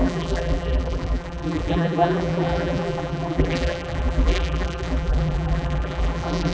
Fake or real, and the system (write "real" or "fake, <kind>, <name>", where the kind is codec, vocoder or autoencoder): fake, vocoder, BigVGAN v2